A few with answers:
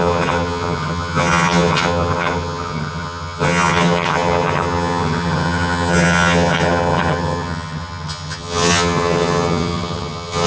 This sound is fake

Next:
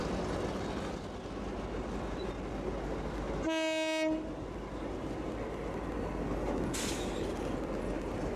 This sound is real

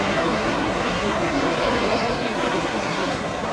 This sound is fake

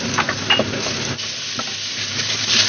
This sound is real